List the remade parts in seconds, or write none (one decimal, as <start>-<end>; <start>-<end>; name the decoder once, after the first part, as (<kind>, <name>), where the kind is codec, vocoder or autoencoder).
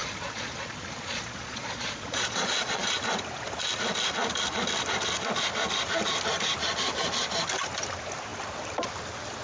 0.0-2.9 (vocoder, Vocos)